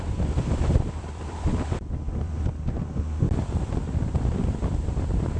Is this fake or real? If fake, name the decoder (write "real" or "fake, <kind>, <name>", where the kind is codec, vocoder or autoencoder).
fake, vocoder, BigVGAN v2